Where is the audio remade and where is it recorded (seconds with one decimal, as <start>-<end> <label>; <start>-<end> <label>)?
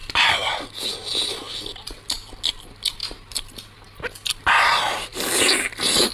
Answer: 0.0-6.1 recorded